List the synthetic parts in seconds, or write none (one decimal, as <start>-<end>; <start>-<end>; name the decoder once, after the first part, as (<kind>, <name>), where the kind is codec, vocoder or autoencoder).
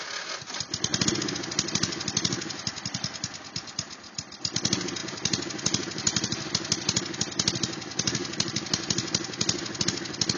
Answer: none